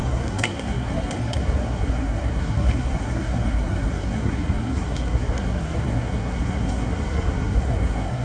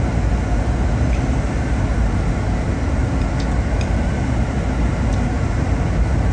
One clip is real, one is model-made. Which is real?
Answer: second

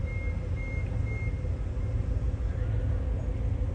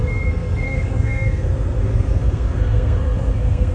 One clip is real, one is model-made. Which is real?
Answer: first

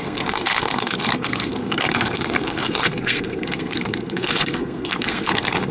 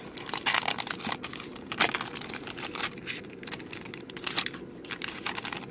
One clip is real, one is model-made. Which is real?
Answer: second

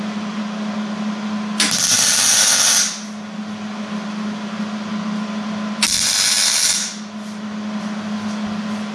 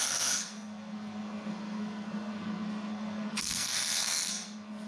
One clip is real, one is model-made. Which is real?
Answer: first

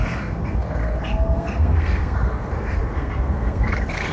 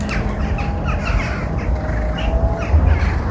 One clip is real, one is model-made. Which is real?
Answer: second